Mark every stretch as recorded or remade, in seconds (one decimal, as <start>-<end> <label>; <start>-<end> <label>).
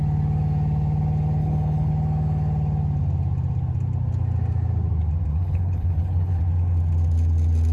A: 0.0-1.4 recorded; 1.4-1.9 remade; 1.9-5.3 recorded; 5.3-6.4 remade; 6.4-7.7 recorded